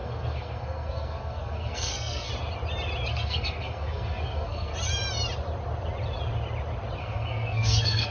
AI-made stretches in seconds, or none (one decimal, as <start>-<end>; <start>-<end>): 0.0-2.3; 3.1-4.7; 7.0-8.1